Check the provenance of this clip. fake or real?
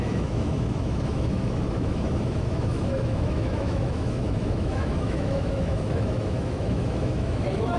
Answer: fake